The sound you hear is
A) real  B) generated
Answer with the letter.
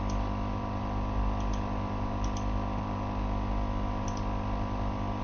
A